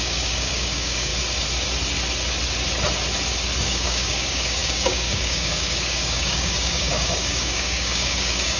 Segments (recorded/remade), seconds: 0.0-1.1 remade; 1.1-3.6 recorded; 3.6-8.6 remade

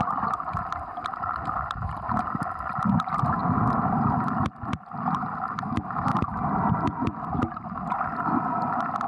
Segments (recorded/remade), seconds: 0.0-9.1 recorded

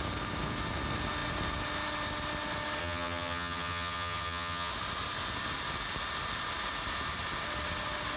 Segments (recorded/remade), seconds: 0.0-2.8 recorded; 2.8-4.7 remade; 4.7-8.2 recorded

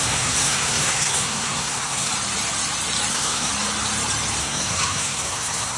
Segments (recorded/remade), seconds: 0.0-2.1 remade; 2.1-3.1 recorded; 3.1-3.5 remade; 3.5-4.4 recorded; 4.4-5.8 remade

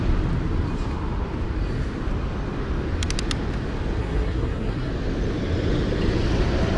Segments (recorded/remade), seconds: 0.0-4.0 recorded; 4.0-4.9 remade; 4.9-6.8 recorded